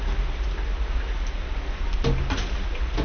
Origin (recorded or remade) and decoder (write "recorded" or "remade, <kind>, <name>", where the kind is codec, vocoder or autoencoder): recorded